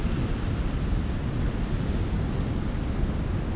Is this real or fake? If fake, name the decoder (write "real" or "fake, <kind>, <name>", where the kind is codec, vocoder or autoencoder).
real